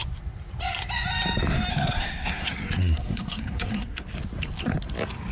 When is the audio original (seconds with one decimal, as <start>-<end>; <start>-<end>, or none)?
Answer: 0.0-1.7; 4.0-5.3